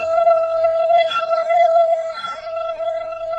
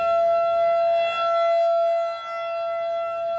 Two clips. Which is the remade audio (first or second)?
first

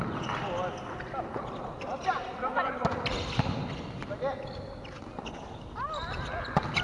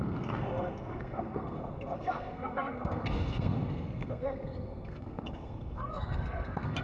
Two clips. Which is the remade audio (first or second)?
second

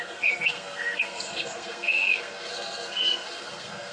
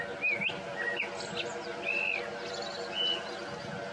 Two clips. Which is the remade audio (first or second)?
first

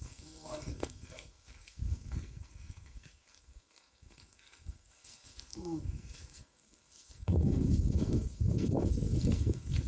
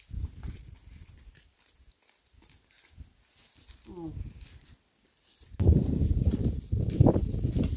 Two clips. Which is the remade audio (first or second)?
first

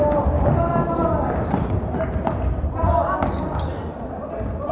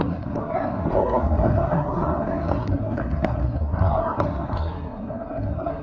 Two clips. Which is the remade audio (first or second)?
second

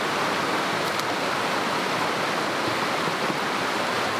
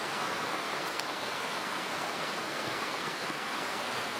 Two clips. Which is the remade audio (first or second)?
second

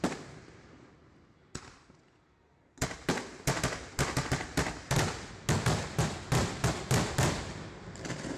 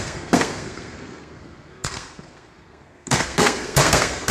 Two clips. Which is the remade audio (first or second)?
second